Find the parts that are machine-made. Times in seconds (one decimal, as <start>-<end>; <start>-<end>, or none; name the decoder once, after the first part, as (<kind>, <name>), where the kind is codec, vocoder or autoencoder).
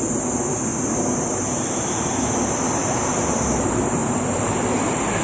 0.7-2.3 (vocoder, BigVGAN v2); 2.8-3.4